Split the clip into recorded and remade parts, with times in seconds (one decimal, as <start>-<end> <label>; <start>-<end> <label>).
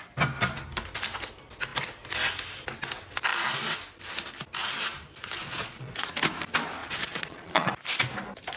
0.0-5.4 recorded; 5.4-6.1 remade; 6.1-6.8 recorded; 6.8-7.7 remade; 7.7-8.6 recorded